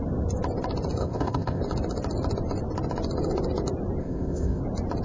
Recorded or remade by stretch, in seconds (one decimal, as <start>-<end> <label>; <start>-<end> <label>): 0.0-1.0 recorded; 1.0-1.6 remade; 1.6-4.0 recorded; 4.0-4.6 remade; 4.6-5.0 recorded